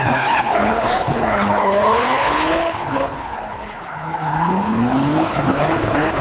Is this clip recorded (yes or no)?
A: no